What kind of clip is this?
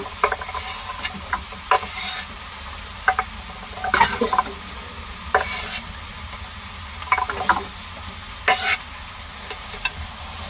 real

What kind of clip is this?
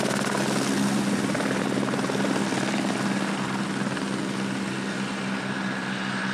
real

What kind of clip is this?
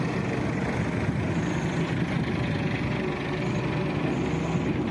real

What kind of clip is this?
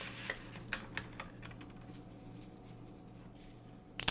real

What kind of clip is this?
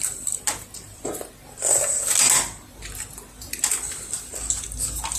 real